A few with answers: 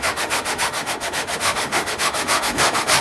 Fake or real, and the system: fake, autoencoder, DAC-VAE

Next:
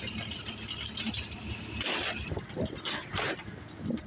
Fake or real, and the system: real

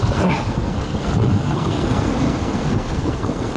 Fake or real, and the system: fake, codec, SNAC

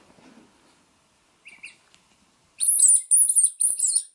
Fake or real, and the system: real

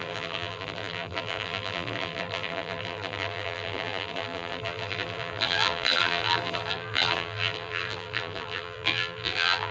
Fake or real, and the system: fake, vocoder, BigVGAN v2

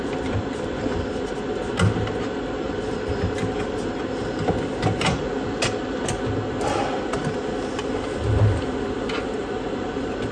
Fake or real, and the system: real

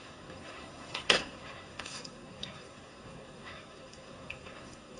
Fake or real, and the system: fake, codec, SNAC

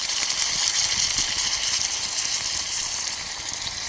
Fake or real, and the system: real